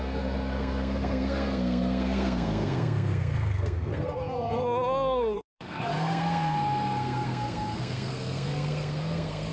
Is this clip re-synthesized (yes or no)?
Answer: yes